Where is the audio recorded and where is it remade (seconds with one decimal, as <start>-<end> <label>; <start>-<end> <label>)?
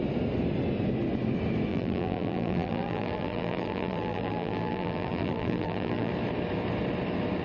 0.0-1.7 recorded; 1.7-6.1 remade; 6.1-7.4 recorded